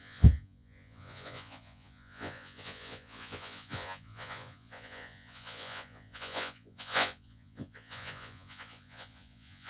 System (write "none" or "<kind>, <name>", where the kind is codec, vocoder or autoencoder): vocoder, Vocos